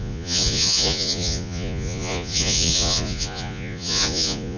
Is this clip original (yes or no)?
no